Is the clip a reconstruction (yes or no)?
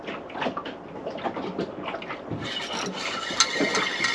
no